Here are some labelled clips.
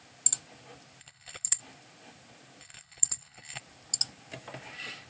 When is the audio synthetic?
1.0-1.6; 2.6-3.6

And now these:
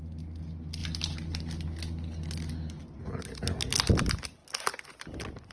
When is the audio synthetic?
none